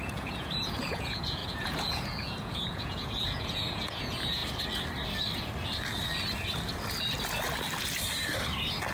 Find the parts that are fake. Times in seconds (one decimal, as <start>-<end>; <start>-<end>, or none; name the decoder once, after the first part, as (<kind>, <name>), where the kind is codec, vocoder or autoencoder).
0.0-4.4 (vocoder, Vocos)